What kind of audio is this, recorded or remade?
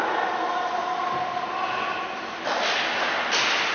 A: recorded